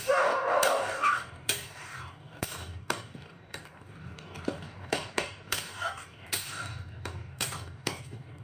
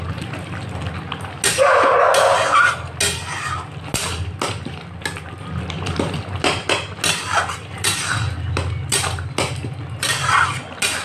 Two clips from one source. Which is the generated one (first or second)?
first